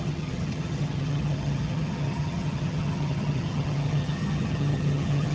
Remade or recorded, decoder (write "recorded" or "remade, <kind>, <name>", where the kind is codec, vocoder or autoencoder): remade, vocoder, HiFi-GAN